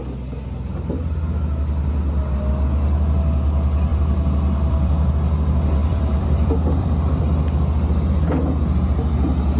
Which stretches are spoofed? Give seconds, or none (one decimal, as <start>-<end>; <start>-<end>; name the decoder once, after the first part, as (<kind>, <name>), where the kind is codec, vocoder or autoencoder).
3.9-4.9 (vocoder, BigVGAN v2); 5.8-7.2